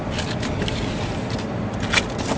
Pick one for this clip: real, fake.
real